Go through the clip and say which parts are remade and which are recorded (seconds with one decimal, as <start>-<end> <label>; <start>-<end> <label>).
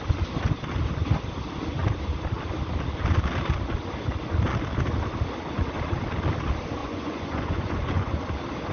0.0-6.8 recorded; 6.8-8.2 remade; 8.2-8.7 recorded